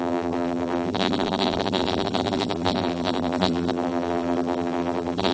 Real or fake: fake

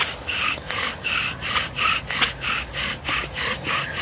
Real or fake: real